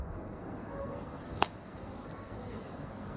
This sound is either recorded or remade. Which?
remade